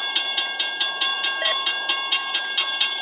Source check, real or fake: fake